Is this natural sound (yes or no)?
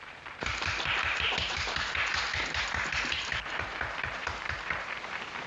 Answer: no